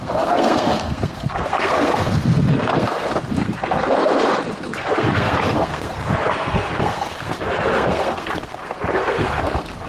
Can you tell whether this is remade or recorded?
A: remade